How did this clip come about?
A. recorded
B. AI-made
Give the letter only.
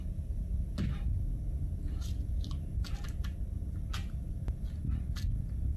A